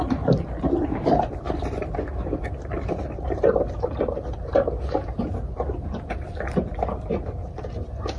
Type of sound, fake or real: real